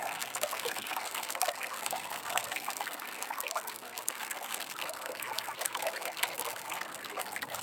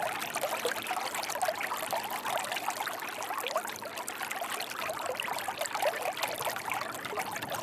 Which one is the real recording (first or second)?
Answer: second